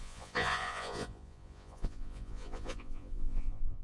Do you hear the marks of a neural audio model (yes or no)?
yes